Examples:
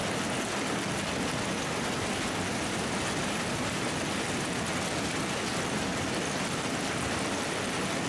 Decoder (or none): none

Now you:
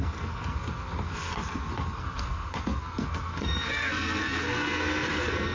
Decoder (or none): codec, SNAC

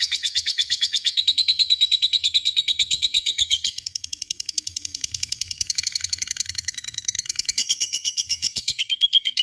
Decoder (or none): codec, SNAC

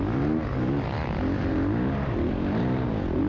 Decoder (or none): none